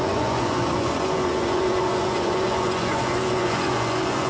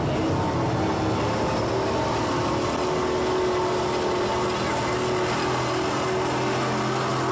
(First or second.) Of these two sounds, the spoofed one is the first